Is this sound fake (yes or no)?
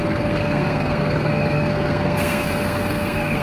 yes